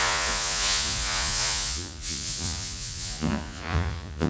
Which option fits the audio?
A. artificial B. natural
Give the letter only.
A